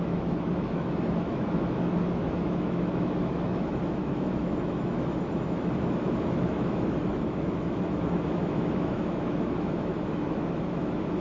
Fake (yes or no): yes